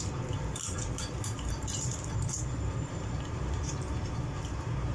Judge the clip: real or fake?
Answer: fake